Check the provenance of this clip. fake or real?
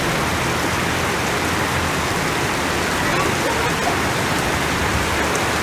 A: real